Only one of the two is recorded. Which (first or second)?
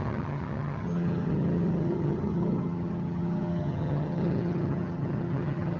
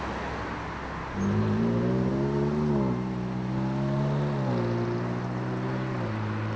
second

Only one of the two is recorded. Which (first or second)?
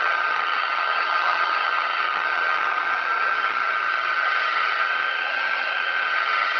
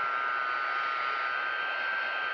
second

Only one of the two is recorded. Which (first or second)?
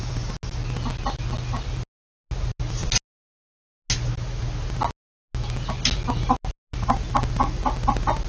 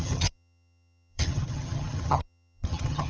first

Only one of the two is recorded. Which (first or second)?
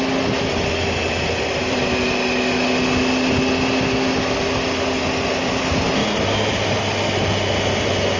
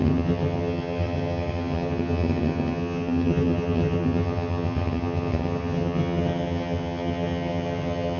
first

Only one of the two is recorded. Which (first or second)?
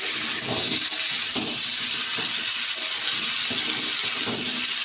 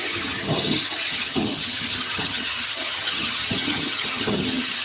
first